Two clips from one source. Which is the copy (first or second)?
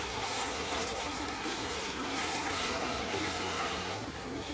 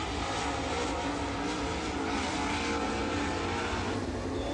first